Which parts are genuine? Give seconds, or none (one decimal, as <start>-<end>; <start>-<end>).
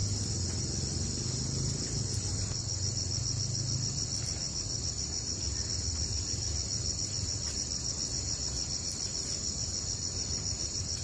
0.0-11.0